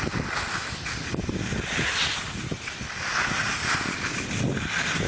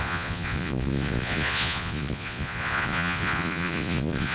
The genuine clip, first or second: first